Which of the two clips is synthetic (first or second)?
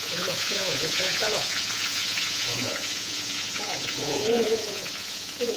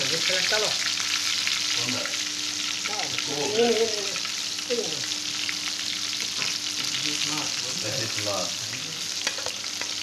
first